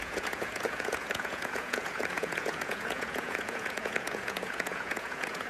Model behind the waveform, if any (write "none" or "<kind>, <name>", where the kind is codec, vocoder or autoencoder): vocoder, Vocos